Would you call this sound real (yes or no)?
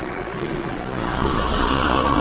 no